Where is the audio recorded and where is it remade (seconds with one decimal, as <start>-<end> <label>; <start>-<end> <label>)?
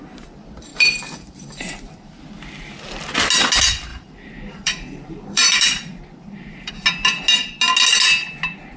0.0-0.7 recorded; 0.7-2.3 remade; 2.3-3.9 recorded; 3.9-6.7 remade; 6.7-8.8 recorded